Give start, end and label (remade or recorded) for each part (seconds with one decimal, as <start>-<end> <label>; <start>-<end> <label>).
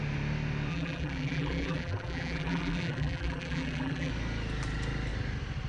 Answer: 0.0-0.7 recorded; 0.7-4.1 remade; 4.1-5.7 recorded